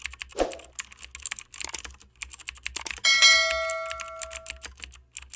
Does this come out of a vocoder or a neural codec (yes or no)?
no